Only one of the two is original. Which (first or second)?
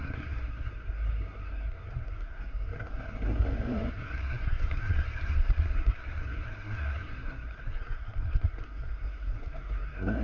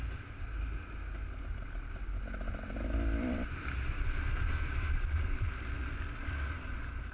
second